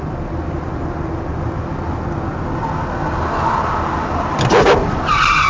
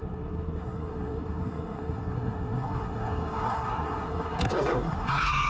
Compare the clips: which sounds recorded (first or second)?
first